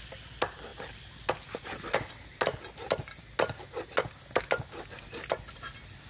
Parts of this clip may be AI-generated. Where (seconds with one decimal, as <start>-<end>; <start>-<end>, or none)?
none